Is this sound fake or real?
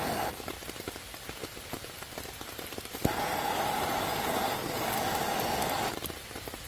real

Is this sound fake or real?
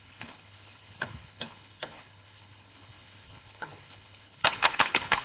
fake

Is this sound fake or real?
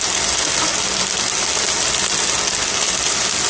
real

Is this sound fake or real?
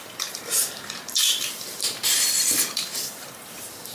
fake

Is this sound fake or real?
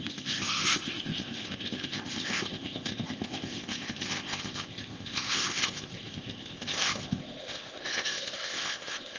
fake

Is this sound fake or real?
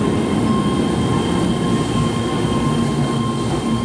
real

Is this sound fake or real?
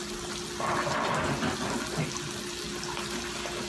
real